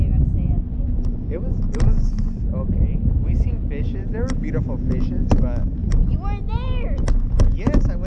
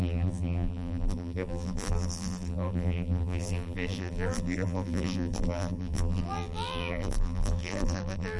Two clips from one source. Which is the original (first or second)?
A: first